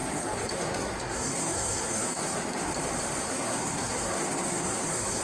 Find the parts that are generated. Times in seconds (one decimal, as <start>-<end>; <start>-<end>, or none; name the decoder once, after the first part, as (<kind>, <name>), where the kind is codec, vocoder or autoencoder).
0.0-2.7 (codec, SNAC); 3.2-5.2